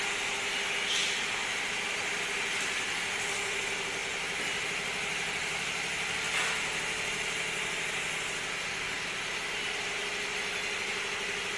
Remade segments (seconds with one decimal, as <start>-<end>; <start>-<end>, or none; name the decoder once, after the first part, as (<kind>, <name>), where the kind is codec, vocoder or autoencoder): none